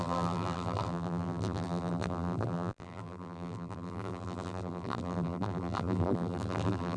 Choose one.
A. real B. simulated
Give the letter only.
B